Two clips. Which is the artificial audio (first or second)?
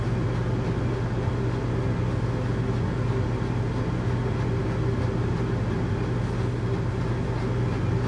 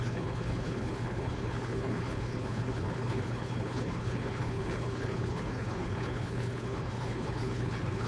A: second